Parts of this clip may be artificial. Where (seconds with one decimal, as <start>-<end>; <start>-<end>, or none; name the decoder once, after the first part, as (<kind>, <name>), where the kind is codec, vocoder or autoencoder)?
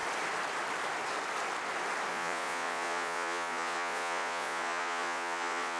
2.1-5.8 (vocoder, Vocos)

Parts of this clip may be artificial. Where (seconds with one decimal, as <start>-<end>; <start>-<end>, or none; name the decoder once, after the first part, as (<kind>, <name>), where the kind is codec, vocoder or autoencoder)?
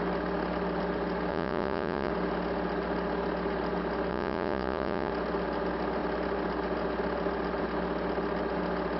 1.3-2.1 (vocoder, Vocos); 4.1-5.1